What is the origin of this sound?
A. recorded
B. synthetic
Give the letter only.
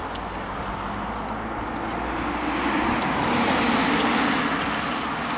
A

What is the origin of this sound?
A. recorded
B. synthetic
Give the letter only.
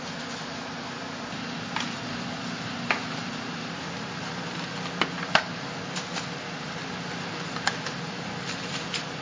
A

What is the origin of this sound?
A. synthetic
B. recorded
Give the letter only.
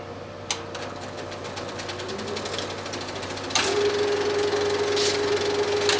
B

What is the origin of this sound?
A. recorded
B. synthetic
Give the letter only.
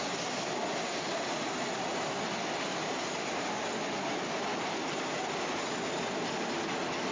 A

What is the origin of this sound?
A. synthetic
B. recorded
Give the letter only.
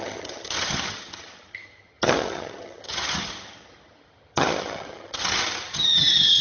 A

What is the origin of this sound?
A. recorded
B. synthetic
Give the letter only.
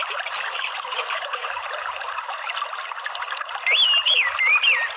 A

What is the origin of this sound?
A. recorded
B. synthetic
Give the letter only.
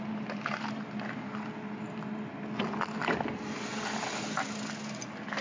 A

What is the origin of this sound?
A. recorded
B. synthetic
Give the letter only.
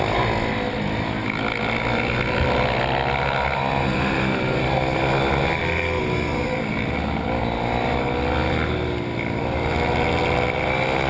A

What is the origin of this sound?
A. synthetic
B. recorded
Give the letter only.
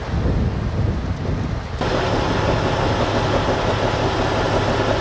B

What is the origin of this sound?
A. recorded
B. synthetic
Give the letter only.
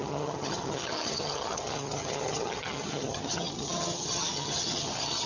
B